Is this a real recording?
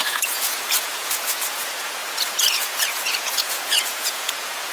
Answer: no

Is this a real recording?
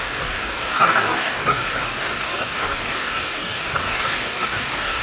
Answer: no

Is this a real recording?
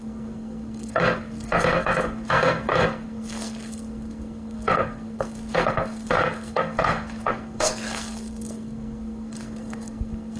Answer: no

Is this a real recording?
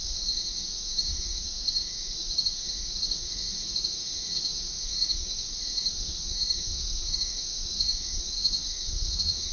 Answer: no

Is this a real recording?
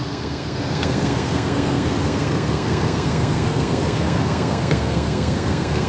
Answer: no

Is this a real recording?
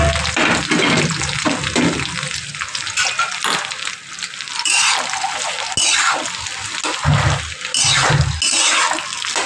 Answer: yes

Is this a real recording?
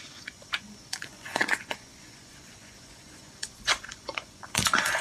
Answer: no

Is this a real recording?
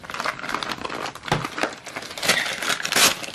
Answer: yes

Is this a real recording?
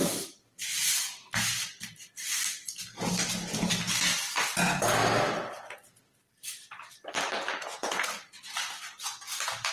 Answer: no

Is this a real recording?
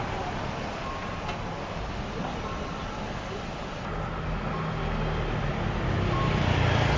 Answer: yes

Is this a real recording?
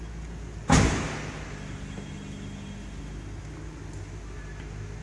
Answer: yes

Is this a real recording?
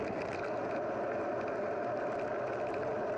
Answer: yes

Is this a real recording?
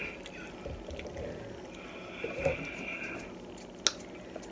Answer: yes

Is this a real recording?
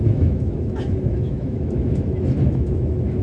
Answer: no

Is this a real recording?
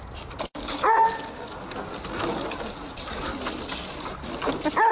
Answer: yes